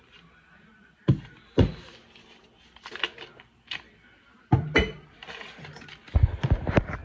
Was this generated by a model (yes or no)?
no